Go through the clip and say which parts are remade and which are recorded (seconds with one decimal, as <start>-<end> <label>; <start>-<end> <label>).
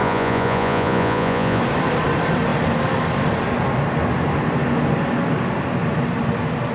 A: 0.0-1.6 remade; 1.6-6.7 recorded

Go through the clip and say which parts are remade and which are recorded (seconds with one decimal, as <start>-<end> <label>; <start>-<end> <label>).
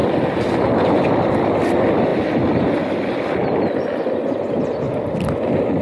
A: 0.0-5.8 recorded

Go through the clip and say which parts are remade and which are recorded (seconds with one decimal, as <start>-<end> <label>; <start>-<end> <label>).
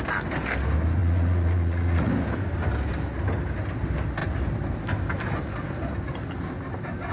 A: 0.0-1.0 recorded; 1.0-2.1 remade; 2.1-7.1 recorded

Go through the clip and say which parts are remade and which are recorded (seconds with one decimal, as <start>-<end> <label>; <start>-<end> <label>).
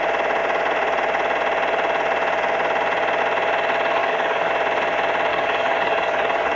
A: 0.0-4.0 recorded; 4.0-4.5 remade; 4.5-5.3 recorded; 5.3-6.6 remade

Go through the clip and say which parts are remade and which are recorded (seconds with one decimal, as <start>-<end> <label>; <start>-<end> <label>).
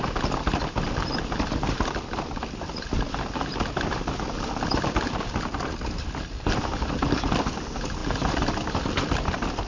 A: 0.0-9.7 recorded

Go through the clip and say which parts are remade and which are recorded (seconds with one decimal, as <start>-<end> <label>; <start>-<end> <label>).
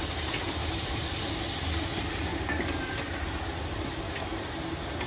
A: 0.0-0.6 recorded; 0.6-1.4 remade; 1.4-2.3 recorded; 2.3-4.0 remade; 4.0-5.1 recorded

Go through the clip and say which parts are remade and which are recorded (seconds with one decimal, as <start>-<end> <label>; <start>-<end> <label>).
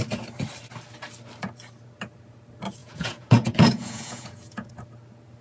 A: 0.0-2.8 recorded; 2.8-4.7 remade; 4.7-5.4 recorded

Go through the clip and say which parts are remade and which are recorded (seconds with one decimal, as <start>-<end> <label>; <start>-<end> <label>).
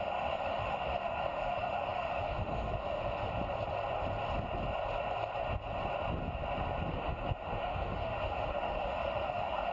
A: 0.0-3.3 remade; 3.3-6.9 recorded; 6.9-9.7 remade